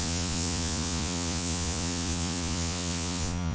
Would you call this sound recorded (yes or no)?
no